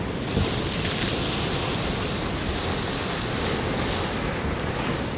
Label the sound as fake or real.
real